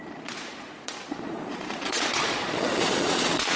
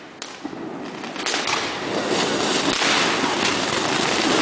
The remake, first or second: first